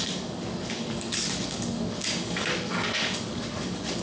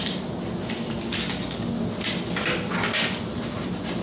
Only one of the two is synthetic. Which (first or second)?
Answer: first